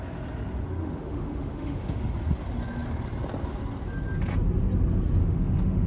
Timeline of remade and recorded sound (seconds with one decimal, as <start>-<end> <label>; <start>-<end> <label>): 0.0-0.8 recorded; 0.8-2.0 remade; 2.0-5.2 recorded; 5.2-5.9 remade